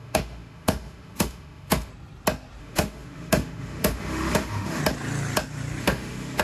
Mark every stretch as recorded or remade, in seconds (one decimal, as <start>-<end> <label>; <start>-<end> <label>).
0.0-1.9 remade; 1.9-2.6 recorded; 2.6-4.8 remade; 4.8-5.8 recorded; 5.8-6.4 remade